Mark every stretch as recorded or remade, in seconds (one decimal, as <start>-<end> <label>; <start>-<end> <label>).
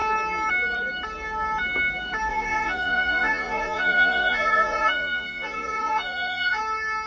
0.0-2.3 recorded; 2.3-6.6 remade; 6.6-7.1 recorded